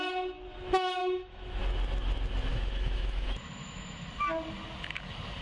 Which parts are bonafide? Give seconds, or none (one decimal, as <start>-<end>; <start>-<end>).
0.0-1.0; 1.6-2.5; 4.1-5.4